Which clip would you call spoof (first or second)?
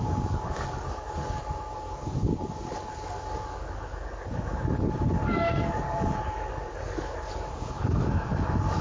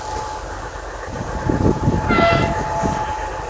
first